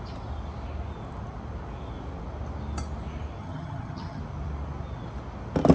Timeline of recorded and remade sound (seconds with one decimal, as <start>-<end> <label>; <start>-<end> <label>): 0.0-3.4 recorded; 3.4-4.2 remade; 4.2-5.7 recorded

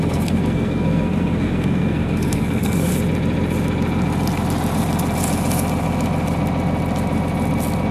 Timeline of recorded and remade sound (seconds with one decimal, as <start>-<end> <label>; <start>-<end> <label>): 0.0-2.9 remade; 2.9-7.9 recorded

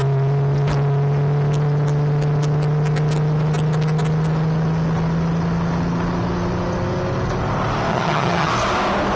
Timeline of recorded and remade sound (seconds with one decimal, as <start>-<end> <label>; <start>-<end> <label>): 0.0-7.9 recorded; 7.9-8.5 remade; 8.5-9.2 recorded

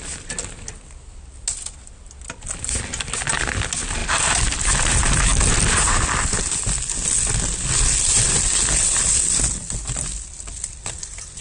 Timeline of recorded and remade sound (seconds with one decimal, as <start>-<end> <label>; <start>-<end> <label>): 0.0-11.4 recorded

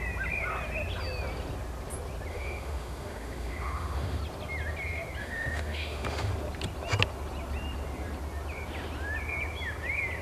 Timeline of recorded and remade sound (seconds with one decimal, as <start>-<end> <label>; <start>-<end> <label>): 0.0-2.3 recorded; 2.3-4.2 remade; 4.2-5.2 recorded; 5.2-6.3 remade; 6.3-10.2 recorded

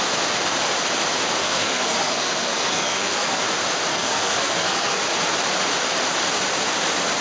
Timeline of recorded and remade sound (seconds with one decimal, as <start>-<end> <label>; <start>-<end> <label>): 0.0-1.4 recorded; 1.4-3.4 remade; 3.4-3.9 recorded; 3.9-5.0 remade; 5.0-7.2 recorded

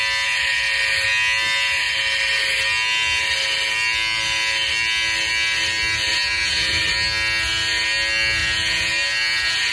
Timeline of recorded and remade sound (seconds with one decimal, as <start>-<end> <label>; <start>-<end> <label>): 0.0-6.1 recorded; 6.1-6.8 remade; 6.8-8.4 recorded; 8.4-9.7 remade